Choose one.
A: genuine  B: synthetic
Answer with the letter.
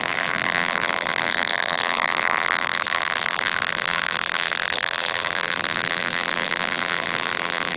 B